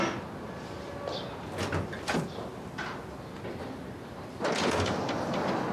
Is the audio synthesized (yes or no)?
no